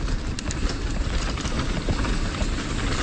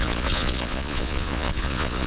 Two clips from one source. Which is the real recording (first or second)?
first